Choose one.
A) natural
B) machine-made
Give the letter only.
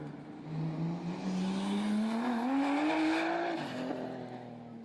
A